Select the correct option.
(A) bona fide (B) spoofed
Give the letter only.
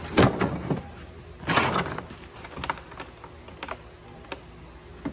A